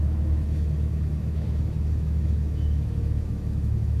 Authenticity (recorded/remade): remade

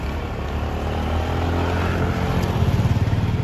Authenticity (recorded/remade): recorded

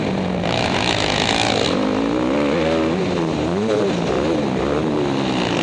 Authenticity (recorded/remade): recorded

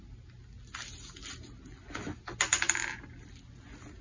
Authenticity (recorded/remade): recorded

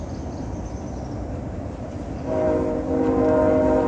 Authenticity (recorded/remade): recorded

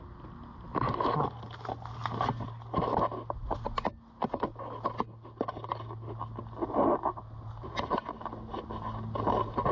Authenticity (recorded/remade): recorded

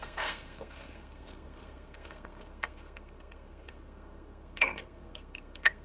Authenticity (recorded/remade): remade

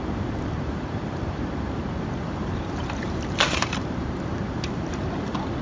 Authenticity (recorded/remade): remade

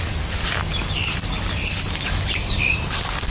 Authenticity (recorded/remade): recorded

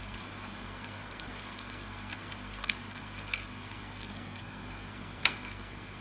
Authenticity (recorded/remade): remade